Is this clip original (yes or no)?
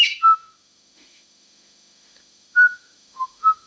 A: no